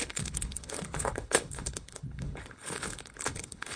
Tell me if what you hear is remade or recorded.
remade